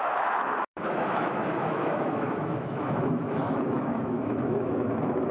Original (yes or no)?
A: no